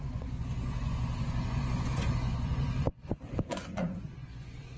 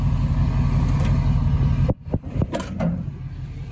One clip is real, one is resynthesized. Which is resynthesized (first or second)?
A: first